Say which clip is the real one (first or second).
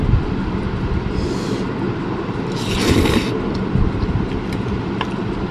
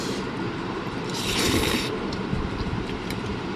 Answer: first